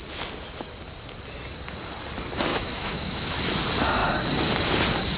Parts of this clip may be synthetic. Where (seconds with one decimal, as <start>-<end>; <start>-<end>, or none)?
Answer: 2.5-3.3